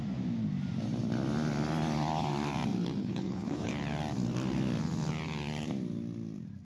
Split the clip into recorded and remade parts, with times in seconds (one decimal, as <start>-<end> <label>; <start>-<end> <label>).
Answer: 0.0-3.0 recorded; 3.0-3.7 remade; 3.7-6.6 recorded